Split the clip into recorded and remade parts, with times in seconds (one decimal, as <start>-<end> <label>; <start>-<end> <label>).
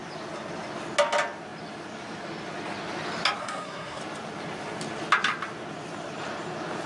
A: 0.0-3.4 recorded; 3.4-4.0 remade; 4.0-6.9 recorded